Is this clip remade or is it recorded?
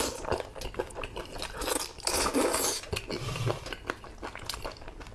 recorded